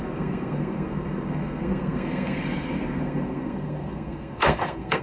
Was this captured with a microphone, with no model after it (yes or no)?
no